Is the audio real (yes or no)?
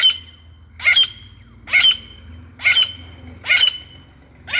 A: yes